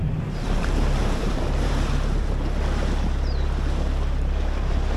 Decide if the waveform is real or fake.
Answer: fake